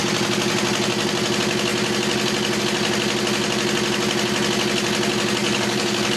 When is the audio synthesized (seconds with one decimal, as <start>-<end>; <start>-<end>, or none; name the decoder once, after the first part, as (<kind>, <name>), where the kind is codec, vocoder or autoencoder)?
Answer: 5.4-6.2 (codec, DAC)